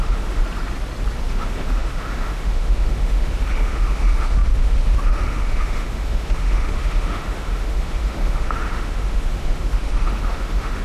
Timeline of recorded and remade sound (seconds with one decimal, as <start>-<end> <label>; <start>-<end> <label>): 0.0-0.4 remade; 0.4-1.3 recorded; 1.3-10.8 remade